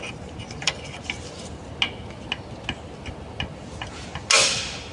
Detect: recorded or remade recorded